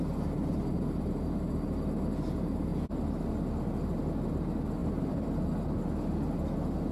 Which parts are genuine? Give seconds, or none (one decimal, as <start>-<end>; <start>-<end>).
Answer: 0.0-4.8; 5.8-6.9